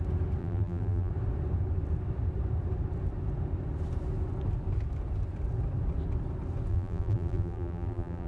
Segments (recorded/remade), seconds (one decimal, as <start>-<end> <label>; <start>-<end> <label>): 0.0-0.4 recorded; 0.4-1.1 remade; 1.1-6.7 recorded; 6.7-8.3 remade